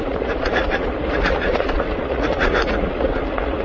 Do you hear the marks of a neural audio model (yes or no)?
yes